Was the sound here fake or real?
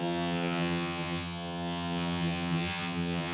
fake